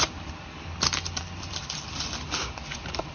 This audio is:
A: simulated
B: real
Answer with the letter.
A